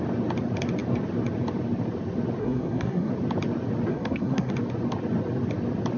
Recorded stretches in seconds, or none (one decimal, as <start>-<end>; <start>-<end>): 0.0-2.4; 3.1-3.9; 4.5-6.0